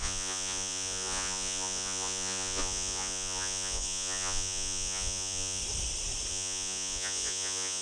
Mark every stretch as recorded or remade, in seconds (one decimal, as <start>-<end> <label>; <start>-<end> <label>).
0.0-5.6 remade; 5.6-6.3 recorded; 6.3-7.8 remade